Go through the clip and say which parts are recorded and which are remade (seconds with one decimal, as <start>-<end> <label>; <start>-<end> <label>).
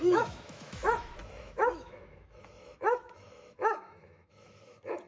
0.0-5.1 remade